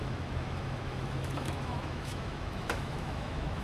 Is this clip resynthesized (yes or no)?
yes